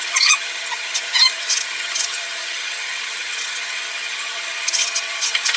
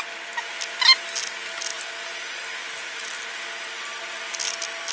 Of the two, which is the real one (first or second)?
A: second